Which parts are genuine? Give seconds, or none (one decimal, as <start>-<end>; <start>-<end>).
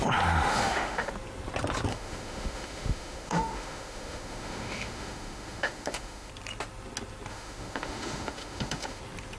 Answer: 0.0-0.5; 1.1-1.9; 6.3-7.3; 9.0-9.4